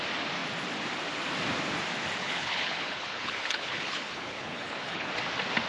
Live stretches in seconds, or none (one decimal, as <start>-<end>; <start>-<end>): 0.0-2.2; 5.1-5.7